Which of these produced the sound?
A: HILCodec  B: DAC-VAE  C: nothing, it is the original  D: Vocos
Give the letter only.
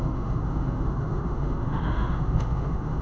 B